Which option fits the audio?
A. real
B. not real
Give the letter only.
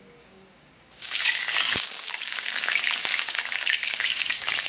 B